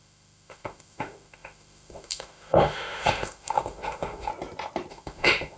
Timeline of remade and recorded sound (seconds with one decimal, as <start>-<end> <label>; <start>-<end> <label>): 0.0-4.3 remade; 4.3-4.9 recorded; 4.9-5.6 remade